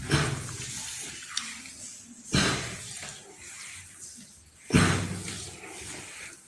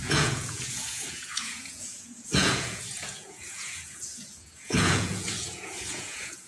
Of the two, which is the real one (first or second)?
first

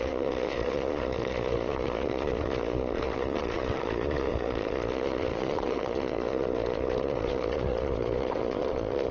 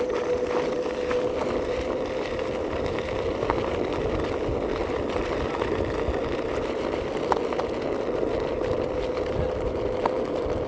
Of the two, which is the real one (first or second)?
second